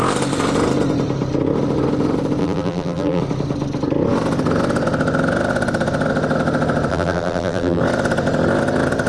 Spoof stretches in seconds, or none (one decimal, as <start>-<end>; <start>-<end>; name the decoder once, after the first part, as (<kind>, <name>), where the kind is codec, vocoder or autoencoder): 2.4-3.2 (vocoder, BigVGAN v2); 6.9-7.8

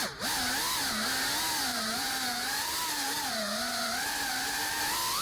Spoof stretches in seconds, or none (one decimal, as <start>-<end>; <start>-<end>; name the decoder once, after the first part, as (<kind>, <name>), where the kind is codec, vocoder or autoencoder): 1.7-4.8 (vocoder, BigVGAN v2)

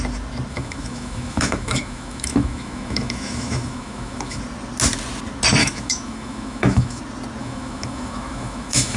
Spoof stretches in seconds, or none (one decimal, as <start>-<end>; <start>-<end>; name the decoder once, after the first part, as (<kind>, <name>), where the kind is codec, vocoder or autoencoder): 0.5-4.4 (autoencoder, DAC-VAE); 5.6-7.0; 7.4-9.0

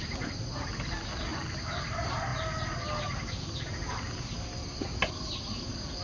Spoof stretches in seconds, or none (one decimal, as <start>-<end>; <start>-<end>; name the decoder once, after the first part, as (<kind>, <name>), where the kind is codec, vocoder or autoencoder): none

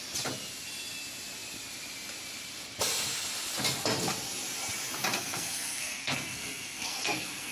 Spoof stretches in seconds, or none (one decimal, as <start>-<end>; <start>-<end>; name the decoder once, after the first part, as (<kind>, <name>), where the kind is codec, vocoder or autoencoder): 5.1-7.5 (codec, SNAC)

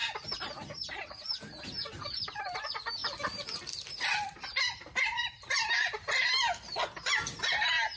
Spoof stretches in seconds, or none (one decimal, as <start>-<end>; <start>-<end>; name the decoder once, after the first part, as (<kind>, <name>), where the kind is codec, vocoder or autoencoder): none